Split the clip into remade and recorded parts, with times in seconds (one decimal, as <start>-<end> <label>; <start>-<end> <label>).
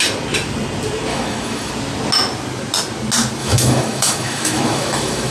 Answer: 0.0-1.1 recorded; 1.1-1.7 remade; 1.7-3.4 recorded; 3.4-5.3 remade